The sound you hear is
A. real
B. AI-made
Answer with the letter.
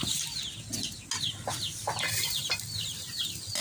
A